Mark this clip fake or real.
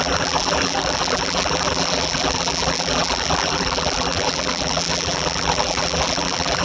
fake